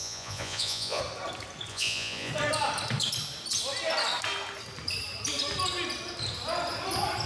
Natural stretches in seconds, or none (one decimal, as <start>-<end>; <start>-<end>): 1.0-1.7; 2.3-7.3